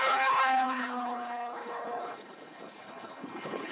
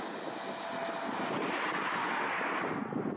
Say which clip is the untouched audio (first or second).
second